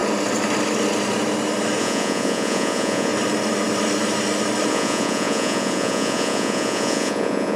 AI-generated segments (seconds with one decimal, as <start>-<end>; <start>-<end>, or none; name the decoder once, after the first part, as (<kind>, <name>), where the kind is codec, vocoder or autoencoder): 1.8-3.1 (vocoder, Vocos); 4.7-7.6